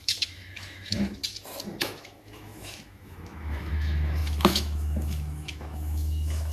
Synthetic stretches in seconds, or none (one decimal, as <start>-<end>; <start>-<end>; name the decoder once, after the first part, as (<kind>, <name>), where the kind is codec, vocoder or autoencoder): 0.0-1.2 (autoencoder, DAC-VAE); 1.8-6.5